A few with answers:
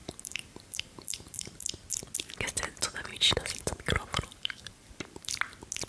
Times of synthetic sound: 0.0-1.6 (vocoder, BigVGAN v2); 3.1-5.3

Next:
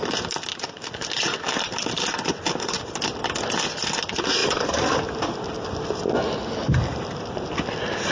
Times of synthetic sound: 0.5-2.9 (vocoder, BigVGAN v2); 4.4-6.0; 6.9-7.5

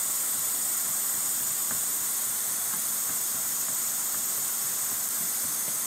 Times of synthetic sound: 0.0-1.3 (vocoder, BigVGAN v2); 1.9-5.4